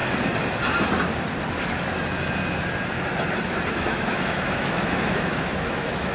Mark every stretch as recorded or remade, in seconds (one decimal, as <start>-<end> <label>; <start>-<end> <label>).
0.0-3.7 recorded; 3.7-6.1 remade